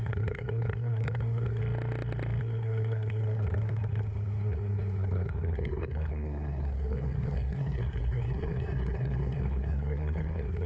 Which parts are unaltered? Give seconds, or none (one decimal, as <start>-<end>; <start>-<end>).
1.6-2.4